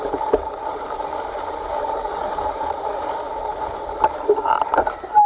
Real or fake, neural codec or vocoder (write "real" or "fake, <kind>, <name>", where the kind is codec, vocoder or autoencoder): fake, vocoder, BigVGAN v2